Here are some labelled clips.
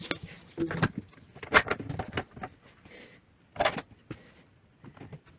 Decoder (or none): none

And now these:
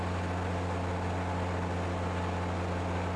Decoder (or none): none